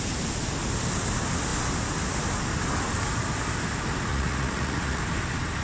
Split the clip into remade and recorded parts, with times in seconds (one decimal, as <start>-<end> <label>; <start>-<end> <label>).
0.0-4.1 recorded; 4.1-5.0 remade; 5.0-5.6 recorded